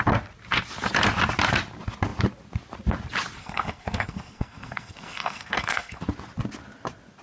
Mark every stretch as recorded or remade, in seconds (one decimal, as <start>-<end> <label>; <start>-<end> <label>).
0.0-3.4 recorded; 3.4-6.0 remade; 6.0-7.2 recorded